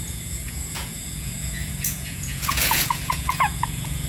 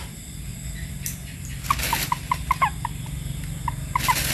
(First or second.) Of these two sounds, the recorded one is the second